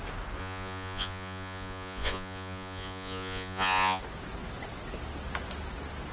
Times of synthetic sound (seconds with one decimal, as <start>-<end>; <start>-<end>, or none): 0.4-4.0